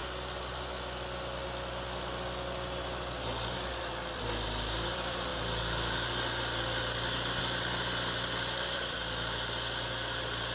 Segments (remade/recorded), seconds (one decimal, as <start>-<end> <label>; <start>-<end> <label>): 0.0-3.8 recorded; 3.8-10.5 remade